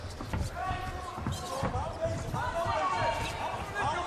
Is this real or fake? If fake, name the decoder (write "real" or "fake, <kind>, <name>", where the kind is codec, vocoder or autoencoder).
real